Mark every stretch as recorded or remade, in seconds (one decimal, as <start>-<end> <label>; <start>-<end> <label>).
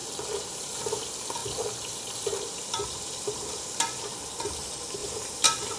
0.0-0.8 remade; 0.8-1.4 recorded; 1.4-4.0 remade; 4.0-5.0 recorded; 5.0-5.8 remade